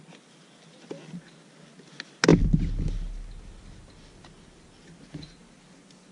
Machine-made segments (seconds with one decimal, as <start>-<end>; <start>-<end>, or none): none